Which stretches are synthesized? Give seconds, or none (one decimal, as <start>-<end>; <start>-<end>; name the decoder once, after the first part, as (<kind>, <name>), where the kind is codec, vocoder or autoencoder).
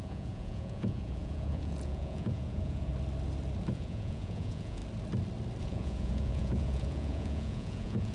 0.0-2.9 (vocoder, Vocos); 3.7-4.8; 5.6-8.1